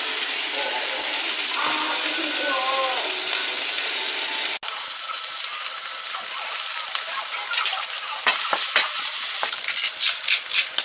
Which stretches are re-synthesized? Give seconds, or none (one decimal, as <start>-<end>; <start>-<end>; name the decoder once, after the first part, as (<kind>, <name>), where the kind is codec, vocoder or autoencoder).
none